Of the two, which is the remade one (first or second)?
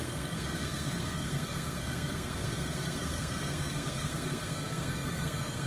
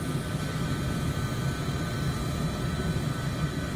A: first